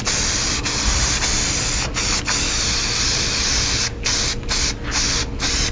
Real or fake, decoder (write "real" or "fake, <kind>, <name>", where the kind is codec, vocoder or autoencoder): real